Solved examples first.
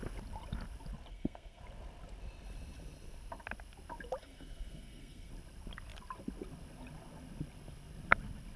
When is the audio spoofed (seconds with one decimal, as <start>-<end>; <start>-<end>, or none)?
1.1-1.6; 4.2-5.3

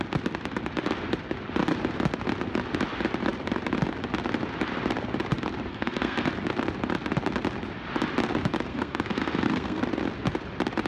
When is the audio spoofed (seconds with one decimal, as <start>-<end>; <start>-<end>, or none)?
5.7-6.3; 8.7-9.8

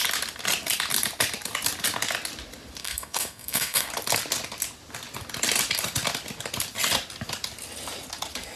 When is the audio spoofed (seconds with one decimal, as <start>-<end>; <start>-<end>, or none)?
2.8-3.9

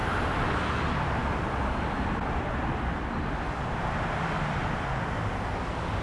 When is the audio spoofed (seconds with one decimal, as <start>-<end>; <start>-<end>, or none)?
none

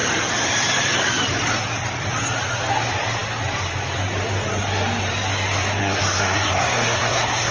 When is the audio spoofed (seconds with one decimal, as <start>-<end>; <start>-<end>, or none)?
5.8-7.5

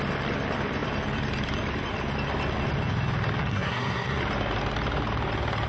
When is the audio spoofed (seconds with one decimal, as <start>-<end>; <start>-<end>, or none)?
3.4-4.2

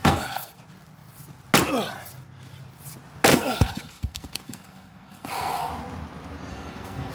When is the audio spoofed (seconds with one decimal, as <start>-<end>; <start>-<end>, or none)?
0.0-0.6; 3.3-5.7; 6.5-7.1